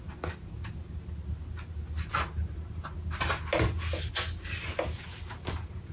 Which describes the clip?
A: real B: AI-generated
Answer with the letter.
A